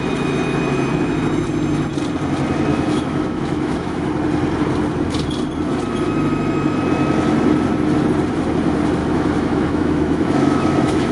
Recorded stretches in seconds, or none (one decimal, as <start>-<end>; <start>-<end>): 0.0-2.7; 4.1-9.0